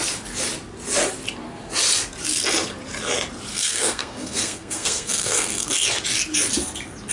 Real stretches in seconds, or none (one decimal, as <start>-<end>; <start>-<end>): 0.0-3.5; 5.7-7.1